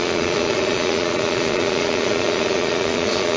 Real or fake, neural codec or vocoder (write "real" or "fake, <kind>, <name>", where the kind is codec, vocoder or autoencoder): fake, vocoder, Vocos